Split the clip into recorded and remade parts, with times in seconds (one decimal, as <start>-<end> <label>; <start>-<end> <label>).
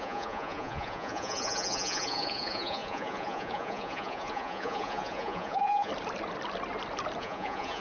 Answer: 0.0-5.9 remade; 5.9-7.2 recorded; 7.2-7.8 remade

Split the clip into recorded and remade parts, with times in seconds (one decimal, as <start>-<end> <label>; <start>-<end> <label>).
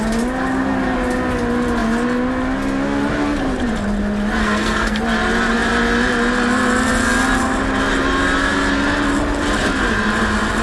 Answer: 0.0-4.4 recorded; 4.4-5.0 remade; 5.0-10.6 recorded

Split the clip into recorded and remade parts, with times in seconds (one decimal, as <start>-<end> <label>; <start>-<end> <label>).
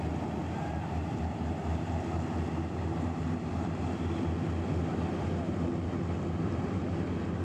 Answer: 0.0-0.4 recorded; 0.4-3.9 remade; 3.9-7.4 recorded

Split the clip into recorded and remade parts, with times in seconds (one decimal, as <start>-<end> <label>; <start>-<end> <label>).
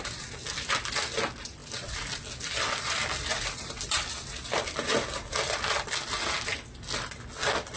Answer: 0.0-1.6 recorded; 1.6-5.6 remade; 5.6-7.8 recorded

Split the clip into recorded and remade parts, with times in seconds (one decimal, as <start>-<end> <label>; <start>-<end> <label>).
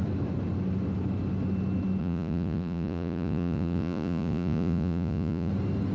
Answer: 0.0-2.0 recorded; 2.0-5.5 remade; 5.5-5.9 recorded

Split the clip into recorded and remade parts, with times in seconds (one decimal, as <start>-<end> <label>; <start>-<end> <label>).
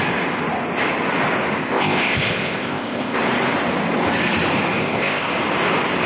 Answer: 0.0-1.6 recorded; 1.6-3.2 remade; 3.2-4.8 recorded; 4.8-5.3 remade; 5.3-6.1 recorded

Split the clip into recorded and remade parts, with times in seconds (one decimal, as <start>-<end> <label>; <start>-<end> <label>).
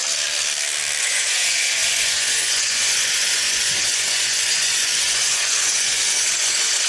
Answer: 0.0-1.0 recorded; 1.0-6.9 remade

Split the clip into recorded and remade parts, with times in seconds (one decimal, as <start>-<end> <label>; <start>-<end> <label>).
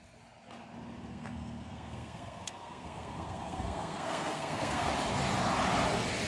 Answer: 0.0-1.1 recorded; 1.1-4.9 remade; 4.9-6.3 recorded